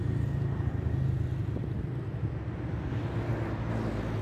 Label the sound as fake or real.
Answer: real